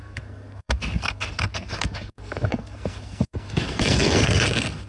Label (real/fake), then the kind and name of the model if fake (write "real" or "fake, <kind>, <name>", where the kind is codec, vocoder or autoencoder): fake, codec, SNAC